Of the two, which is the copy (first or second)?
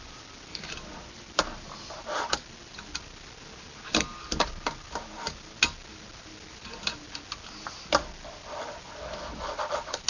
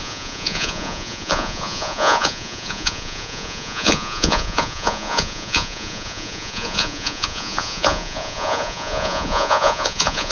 second